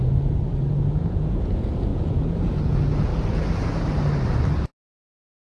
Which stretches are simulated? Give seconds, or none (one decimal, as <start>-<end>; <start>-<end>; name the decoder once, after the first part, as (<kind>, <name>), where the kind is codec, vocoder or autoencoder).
0.0-3.1 (vocoder, Vocos)